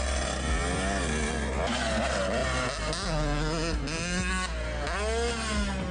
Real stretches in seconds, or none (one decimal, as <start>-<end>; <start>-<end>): 0.0-5.9